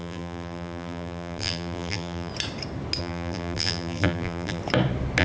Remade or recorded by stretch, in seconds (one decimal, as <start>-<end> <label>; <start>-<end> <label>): 0.0-2.3 remade; 2.3-3.0 recorded; 3.0-4.6 remade; 4.6-5.2 recorded